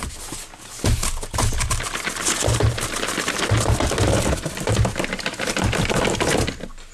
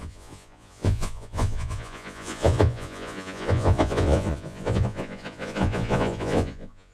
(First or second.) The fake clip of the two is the second